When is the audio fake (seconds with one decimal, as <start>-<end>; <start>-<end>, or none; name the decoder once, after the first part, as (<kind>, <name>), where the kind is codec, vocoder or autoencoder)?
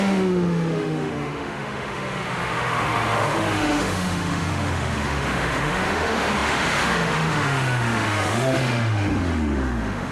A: 0.0-10.1 (autoencoder, DAC-VAE)